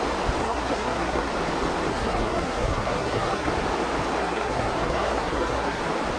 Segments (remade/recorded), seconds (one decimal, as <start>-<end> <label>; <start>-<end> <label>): 0.0-0.4 recorded; 0.4-1.3 remade; 1.3-1.9 recorded; 1.9-3.5 remade; 3.5-4.2 recorded; 4.2-5.8 remade; 5.8-6.2 recorded